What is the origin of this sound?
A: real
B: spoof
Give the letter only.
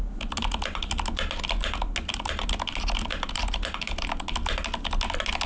A